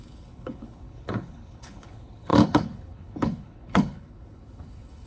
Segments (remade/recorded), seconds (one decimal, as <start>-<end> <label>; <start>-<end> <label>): 0.0-5.1 remade